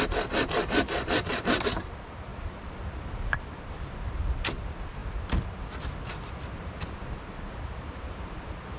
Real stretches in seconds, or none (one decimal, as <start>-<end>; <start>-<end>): 0.0-8.8